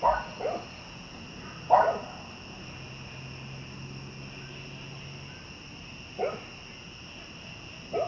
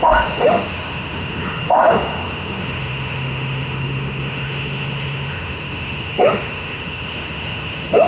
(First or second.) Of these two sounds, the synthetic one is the second